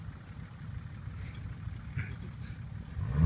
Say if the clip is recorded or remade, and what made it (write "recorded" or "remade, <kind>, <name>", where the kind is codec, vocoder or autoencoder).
recorded